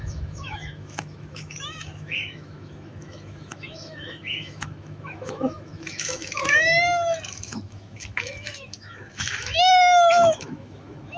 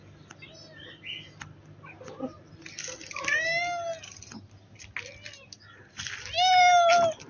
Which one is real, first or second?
second